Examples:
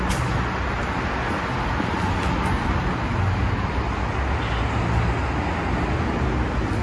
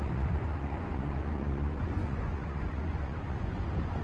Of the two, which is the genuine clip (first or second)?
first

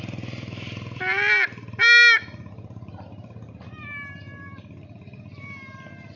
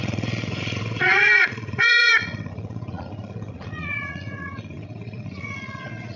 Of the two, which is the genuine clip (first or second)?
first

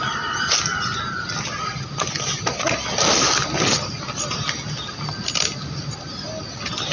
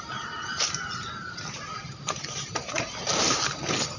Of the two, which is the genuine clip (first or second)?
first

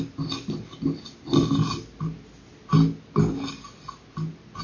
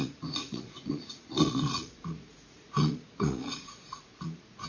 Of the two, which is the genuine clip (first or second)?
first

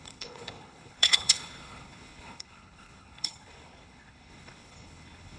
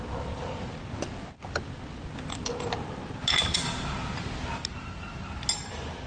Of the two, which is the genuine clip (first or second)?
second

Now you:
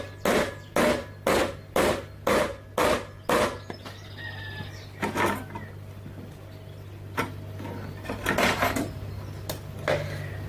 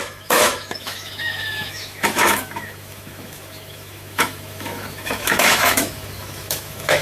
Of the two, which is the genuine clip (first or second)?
first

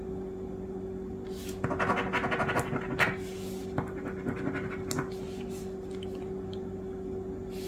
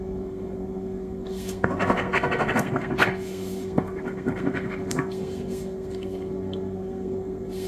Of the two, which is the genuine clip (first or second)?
first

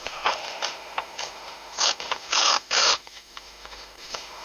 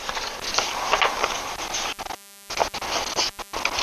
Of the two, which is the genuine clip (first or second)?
second